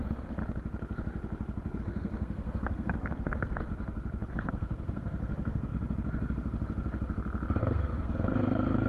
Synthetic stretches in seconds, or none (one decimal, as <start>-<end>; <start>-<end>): 0.0-0.4; 1.8-3.7; 4.3-5.7; 7.6-8.9